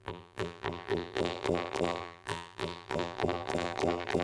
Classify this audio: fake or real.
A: fake